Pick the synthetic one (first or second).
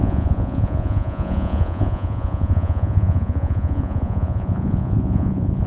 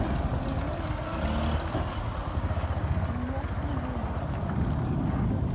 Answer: first